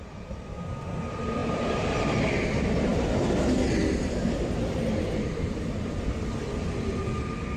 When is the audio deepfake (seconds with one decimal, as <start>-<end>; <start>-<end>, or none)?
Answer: 1.4-2.3